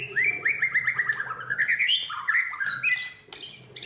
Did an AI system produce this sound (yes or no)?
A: no